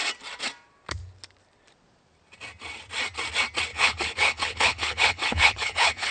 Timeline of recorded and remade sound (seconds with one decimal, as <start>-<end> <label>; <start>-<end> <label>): 0.0-3.7 recorded; 3.7-6.1 remade